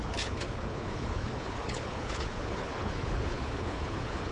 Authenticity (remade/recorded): remade